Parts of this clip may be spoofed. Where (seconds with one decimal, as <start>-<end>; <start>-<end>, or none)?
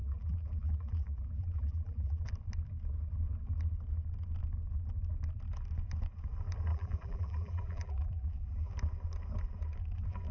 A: 0.0-2.3; 6.7-8.7